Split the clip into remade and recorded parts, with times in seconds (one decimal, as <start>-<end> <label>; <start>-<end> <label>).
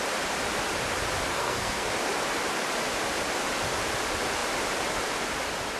0.0-1.3 recorded; 1.3-1.9 remade; 1.9-5.8 recorded